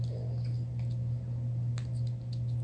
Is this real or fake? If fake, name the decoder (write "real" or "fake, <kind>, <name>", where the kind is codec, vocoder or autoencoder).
real